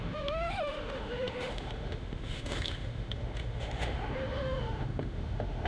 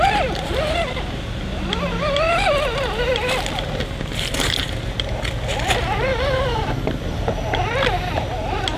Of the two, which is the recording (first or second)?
second